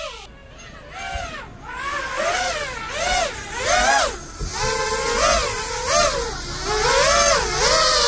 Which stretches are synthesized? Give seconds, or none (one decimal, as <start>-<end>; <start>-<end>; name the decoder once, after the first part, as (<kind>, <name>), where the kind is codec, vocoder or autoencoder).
none